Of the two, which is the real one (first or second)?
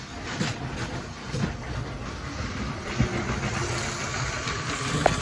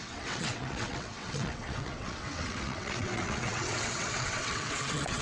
first